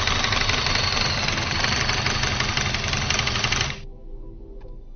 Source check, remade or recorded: recorded